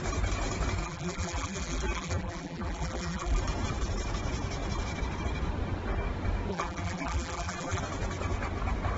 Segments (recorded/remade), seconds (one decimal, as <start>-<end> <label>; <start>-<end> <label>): 0.0-0.8 recorded; 0.8-3.4 remade; 3.4-6.5 recorded; 6.5-7.8 remade; 7.8-9.0 recorded